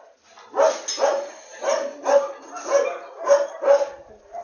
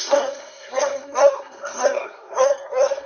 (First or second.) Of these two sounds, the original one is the first